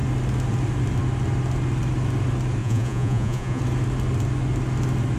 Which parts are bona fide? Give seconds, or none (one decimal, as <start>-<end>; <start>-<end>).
0.0-2.6; 3.6-5.2